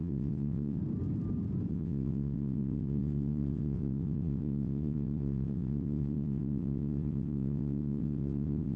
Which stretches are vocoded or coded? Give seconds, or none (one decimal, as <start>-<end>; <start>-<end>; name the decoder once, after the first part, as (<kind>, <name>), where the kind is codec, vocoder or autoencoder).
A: 0.0-0.8 (vocoder, WaveNeXt); 1.7-8.8